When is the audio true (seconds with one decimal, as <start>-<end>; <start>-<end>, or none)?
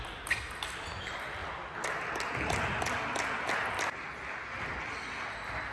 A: 0.0-5.7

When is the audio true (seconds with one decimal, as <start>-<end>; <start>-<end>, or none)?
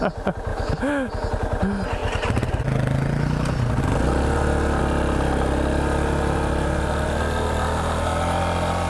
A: 0.0-0.5; 1.1-8.9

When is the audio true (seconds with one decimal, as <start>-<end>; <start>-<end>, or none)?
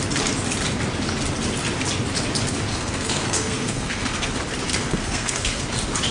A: 0.0-2.7; 4.3-4.7; 5.6-6.1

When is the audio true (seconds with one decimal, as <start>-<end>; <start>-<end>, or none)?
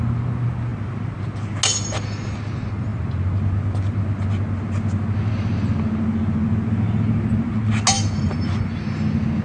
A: 0.0-9.4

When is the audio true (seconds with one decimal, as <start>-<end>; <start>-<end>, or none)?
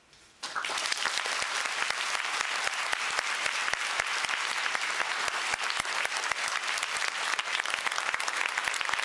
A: 0.0-9.0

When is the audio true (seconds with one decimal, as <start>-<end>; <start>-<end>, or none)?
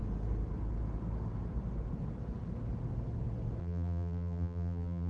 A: 0.0-3.6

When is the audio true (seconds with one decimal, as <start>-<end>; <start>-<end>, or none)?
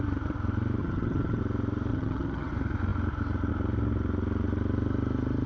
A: 0.0-0.8; 1.4-1.9; 2.5-5.5